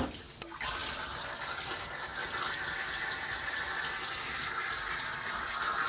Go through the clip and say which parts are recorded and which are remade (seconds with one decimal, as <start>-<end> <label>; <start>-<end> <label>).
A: 0.0-5.9 recorded